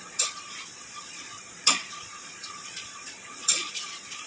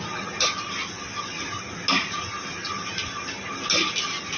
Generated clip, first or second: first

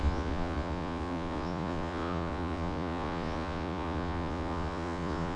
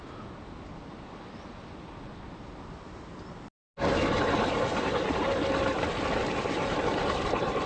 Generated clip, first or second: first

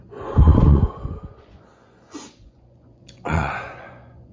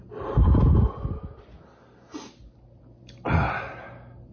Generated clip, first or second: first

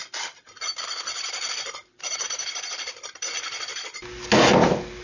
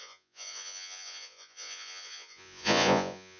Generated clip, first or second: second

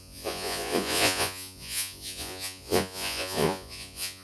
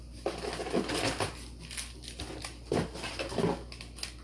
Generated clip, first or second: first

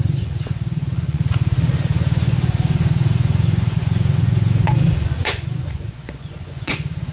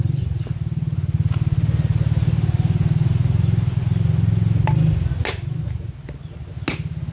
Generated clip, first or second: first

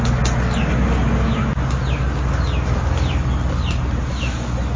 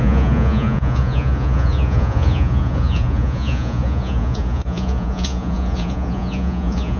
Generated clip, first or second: second